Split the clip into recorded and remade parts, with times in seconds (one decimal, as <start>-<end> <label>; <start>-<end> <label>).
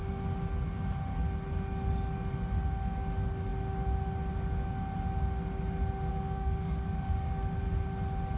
0.0-6.1 recorded; 6.1-7.6 remade; 7.6-8.4 recorded